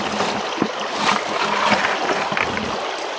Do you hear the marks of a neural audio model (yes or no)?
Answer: no